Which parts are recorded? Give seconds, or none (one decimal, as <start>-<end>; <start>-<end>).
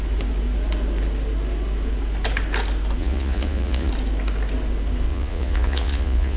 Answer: 0.0-3.0; 3.9-5.1